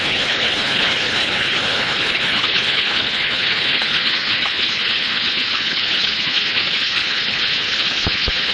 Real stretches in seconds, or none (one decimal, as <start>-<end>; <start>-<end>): none